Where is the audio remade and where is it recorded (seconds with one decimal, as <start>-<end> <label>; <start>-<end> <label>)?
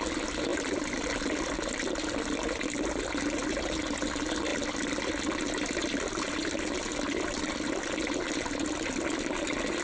0.0-0.5 recorded; 0.5-3.0 remade; 3.0-9.8 recorded